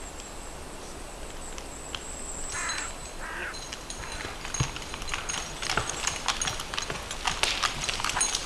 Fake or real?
real